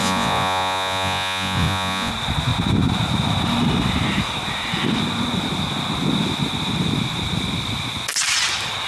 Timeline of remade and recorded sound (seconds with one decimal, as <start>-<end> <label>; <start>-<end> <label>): 0.0-2.1 remade; 2.1-8.9 recorded